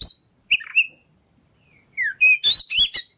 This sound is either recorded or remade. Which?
recorded